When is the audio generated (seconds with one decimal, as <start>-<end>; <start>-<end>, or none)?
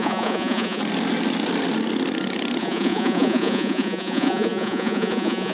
0.0-0.8; 2.6-5.5